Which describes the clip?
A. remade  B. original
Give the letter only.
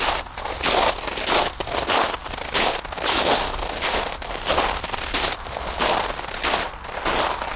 B